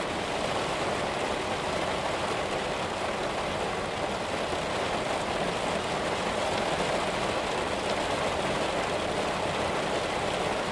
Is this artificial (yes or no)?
no